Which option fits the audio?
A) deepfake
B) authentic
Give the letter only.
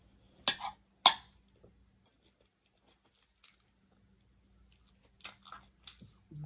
B